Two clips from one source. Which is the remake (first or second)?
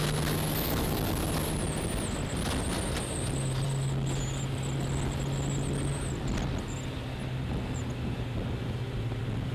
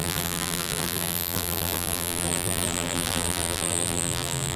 second